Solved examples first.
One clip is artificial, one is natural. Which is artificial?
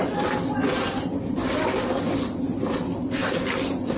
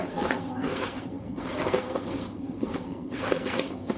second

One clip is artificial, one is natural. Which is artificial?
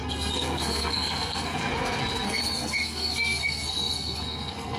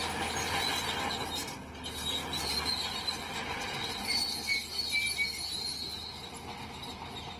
first